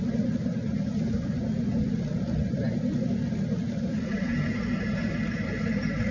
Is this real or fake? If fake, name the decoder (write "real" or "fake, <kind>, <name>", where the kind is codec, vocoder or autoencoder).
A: real